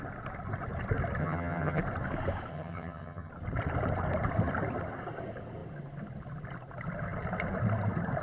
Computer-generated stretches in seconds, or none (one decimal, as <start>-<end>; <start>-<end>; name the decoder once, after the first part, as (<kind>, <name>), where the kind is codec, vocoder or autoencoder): 1.2-1.8 (vocoder, HiFi-GAN); 2.5-3.3